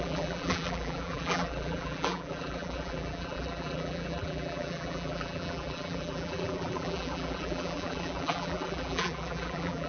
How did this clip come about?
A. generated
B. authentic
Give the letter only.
A